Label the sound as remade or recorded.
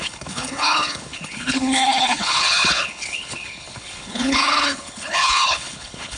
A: remade